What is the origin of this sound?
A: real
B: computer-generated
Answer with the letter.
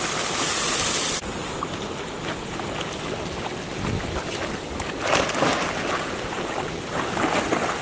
A